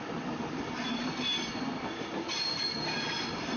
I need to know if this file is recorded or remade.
recorded